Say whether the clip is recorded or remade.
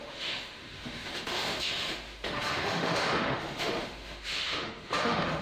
remade